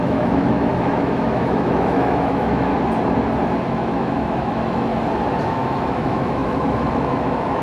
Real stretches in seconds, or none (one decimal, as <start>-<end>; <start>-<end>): 2.7-3.7; 4.9-5.5